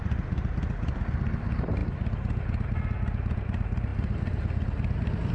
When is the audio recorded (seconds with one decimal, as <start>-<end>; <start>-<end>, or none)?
1.8-2.8